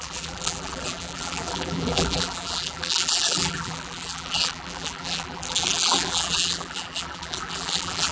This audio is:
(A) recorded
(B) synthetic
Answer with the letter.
B